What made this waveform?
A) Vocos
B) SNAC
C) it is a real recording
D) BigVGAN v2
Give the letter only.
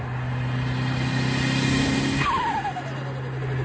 C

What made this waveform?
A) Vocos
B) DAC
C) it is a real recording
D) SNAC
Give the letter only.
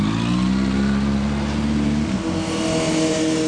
C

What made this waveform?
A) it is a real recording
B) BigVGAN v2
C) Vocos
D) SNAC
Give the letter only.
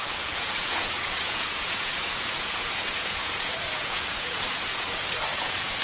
C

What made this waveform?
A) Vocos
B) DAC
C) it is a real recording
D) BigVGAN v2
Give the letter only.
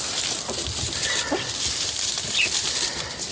C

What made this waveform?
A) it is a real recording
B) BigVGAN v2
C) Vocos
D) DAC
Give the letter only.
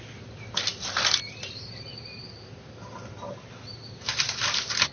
A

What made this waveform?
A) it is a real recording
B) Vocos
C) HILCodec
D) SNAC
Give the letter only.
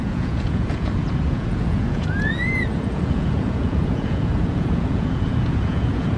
B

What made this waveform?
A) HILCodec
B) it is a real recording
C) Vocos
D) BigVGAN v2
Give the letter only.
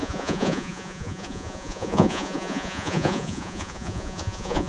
C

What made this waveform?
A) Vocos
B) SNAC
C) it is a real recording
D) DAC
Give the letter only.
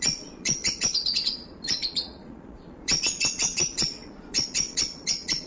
A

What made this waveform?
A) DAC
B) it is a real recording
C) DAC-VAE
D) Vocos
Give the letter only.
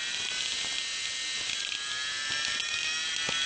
B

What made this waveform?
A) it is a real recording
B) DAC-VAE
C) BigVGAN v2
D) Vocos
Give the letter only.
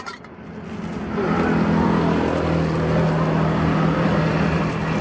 A